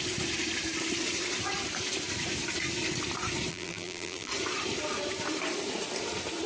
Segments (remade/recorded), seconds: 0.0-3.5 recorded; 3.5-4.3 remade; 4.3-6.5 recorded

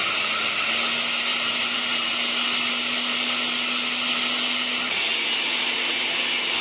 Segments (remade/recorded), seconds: 0.0-1.3 recorded; 1.3-2.1 remade; 2.1-6.6 recorded

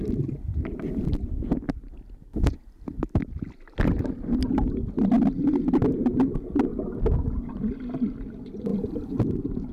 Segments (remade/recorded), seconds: 0.0-6.7 recorded; 6.7-7.5 remade; 7.5-8.7 recorded; 8.7-9.7 remade

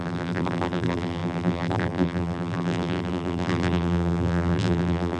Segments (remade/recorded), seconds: 0.0-5.2 remade

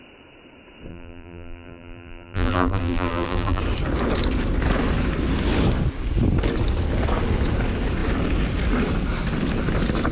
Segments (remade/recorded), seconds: 0.0-0.9 recorded; 0.9-3.6 remade; 3.6-10.1 recorded

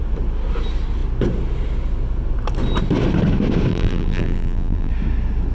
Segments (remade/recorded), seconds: 0.0-3.7 recorded; 3.7-4.9 remade; 4.9-5.5 recorded

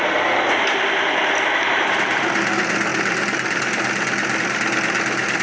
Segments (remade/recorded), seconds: 0.0-5.4 recorded

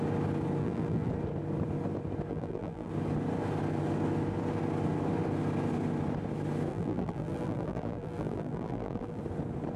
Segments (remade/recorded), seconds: 0.0-0.6 recorded; 0.6-1.1 remade; 1.1-2.3 recorded; 2.3-2.9 remade; 2.9-6.7 recorded; 6.7-9.2 remade; 9.2-9.8 recorded